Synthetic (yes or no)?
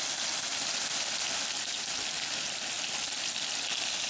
no